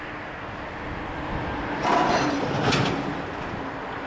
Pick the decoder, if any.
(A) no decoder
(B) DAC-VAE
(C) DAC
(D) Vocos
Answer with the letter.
A